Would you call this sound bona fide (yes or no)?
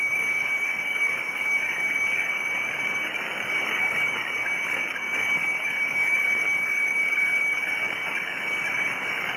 no